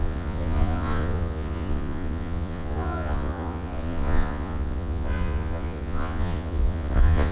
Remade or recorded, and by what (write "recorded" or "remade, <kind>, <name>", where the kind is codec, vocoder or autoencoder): remade, vocoder, Vocos